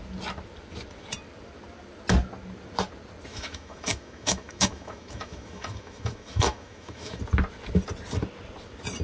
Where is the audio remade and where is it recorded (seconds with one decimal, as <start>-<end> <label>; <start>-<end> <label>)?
0.0-3.3 recorded; 3.3-7.2 remade; 7.2-9.0 recorded